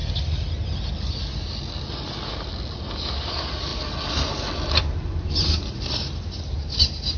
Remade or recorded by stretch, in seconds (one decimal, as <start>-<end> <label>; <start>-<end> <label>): 0.0-7.2 recorded